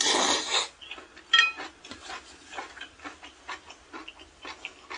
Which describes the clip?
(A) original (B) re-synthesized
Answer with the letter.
A